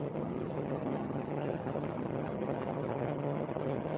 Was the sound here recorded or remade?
remade